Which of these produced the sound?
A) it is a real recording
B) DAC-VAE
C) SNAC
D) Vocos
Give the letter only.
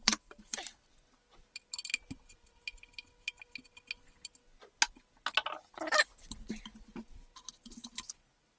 A